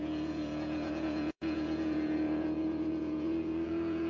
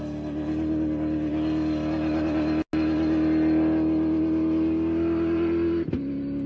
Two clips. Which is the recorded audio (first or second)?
second